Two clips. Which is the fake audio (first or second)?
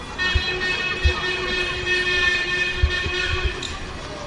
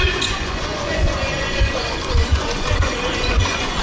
second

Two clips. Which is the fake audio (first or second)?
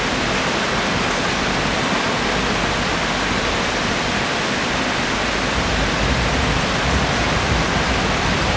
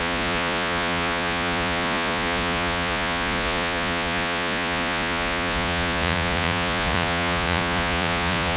second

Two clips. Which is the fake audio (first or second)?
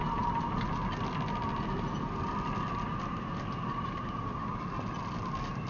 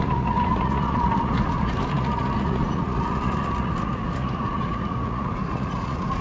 second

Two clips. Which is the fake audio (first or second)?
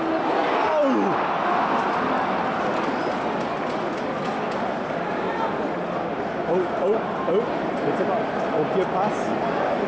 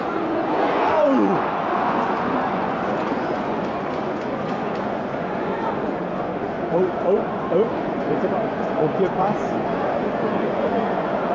second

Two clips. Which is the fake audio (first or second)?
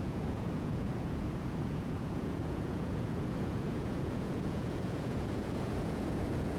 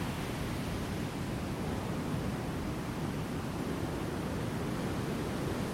first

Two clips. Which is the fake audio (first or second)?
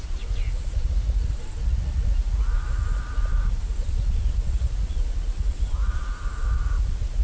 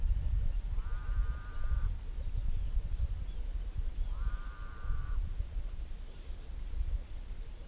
first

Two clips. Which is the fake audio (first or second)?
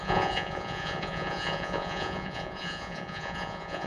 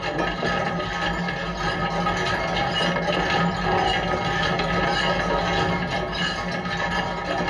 first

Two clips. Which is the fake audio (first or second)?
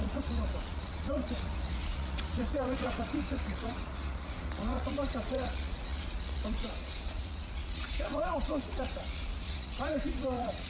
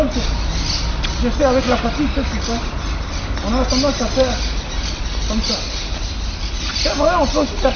first